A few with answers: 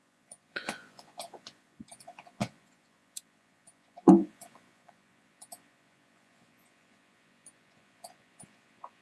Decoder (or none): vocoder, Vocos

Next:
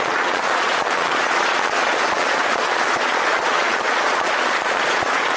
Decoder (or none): vocoder, Vocos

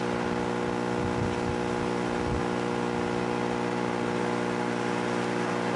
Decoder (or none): none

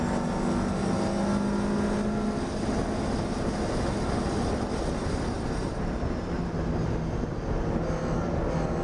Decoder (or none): none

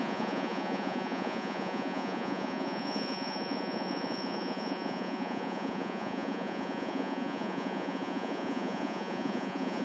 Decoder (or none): vocoder, Vocos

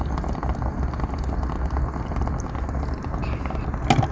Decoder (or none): none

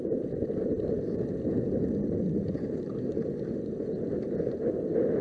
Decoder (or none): none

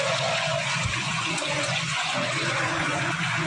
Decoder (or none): vocoder, Vocos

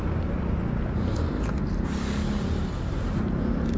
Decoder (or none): none